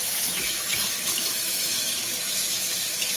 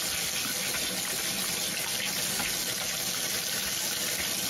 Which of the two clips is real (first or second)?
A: second